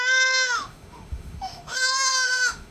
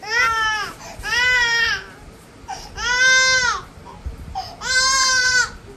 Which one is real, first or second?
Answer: second